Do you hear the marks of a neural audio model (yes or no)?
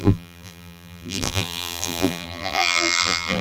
yes